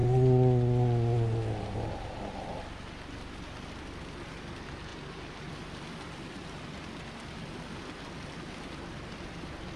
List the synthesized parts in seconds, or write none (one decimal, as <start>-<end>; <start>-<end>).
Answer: none